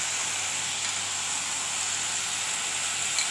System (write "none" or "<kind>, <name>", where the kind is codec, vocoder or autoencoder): none